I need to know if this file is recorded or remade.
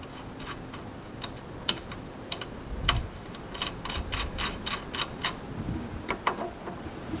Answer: remade